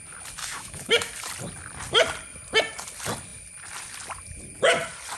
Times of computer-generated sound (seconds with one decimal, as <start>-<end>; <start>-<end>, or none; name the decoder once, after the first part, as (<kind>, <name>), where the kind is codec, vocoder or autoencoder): 0.4-1.1 (autoencoder, DAC-VAE)